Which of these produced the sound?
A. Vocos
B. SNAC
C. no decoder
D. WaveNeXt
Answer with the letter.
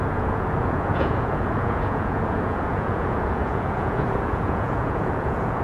A